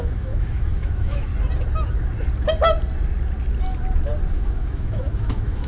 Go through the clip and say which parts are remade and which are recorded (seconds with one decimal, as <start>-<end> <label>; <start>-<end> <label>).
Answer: 0.0-1.3 remade; 1.3-4.3 recorded; 4.3-5.7 remade

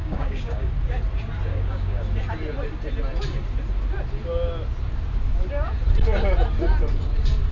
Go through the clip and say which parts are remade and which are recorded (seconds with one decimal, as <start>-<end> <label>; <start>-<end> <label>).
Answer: 0.0-0.7 remade; 0.7-1.5 recorded; 1.5-2.0 remade; 2.0-7.5 recorded